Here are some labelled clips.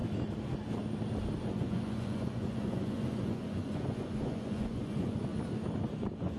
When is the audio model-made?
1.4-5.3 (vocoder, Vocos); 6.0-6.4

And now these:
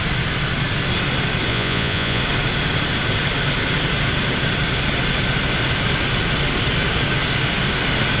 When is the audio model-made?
1.5-2.2 (vocoder, Vocos)

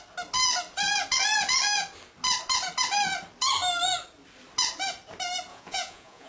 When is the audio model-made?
5.5-6.3 (vocoder, Vocos)

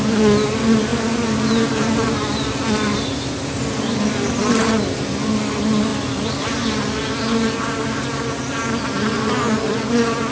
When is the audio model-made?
none